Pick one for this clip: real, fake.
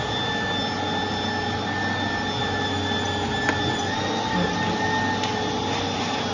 real